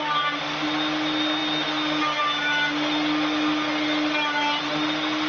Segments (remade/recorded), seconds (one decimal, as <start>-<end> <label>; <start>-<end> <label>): 0.0-5.3 recorded